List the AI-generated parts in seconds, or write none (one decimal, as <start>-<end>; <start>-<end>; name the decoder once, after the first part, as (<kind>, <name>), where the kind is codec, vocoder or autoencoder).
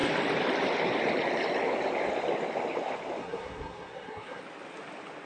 3.2-4.4 (codec, SNAC)